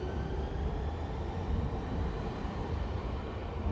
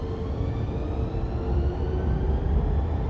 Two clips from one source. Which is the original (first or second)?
second